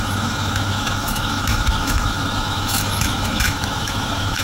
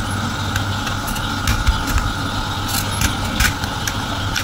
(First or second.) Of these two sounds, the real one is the second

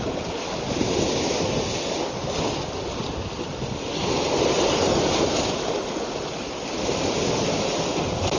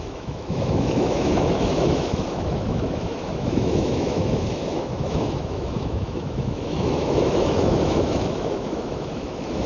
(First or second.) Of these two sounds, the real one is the first